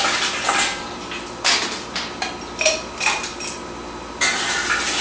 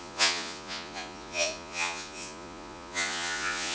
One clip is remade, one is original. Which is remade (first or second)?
second